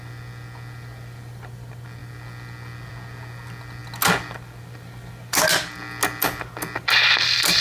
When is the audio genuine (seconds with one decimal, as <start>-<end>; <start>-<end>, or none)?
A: 0.0-7.6

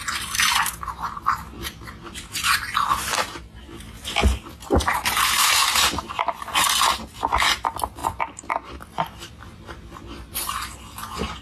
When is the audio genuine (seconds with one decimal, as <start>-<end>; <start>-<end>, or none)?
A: 0.0-2.0; 2.7-5.6; 6.1-8.0; 10.4-11.4

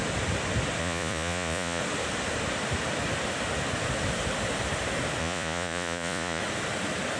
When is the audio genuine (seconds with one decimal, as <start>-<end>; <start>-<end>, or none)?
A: 0.0-0.8; 1.8-5.2; 6.4-7.2

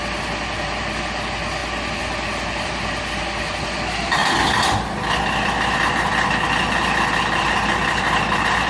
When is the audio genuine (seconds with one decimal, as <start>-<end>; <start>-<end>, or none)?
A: 0.0-8.7

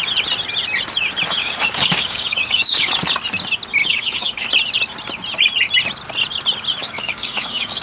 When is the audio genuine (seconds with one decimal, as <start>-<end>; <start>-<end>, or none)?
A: 0.0-1.4; 2.9-3.8; 4.5-6.8

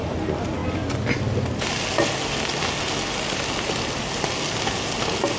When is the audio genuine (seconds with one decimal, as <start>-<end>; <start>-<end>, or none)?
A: 0.0-5.4

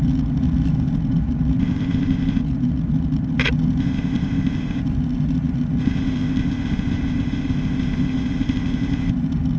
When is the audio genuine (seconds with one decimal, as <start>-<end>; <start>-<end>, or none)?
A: 0.0-1.6; 2.4-3.8; 4.8-5.8; 9.1-9.6

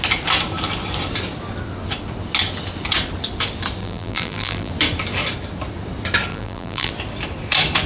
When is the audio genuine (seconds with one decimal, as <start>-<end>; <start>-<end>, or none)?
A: 0.0-3.8; 4.7-6.3; 6.9-7.9